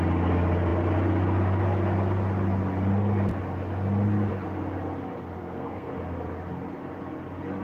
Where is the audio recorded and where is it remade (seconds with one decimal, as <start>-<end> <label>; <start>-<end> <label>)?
0.0-5.4 recorded; 5.4-5.9 remade; 5.9-7.6 recorded